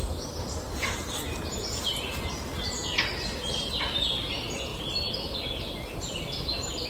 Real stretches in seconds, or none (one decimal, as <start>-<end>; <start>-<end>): 0.0-4.7; 5.4-6.9